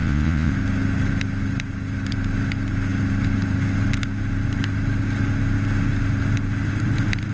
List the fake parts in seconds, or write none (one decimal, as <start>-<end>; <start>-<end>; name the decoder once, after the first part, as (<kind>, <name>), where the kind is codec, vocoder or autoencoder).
0.0-0.5 (vocoder, Vocos)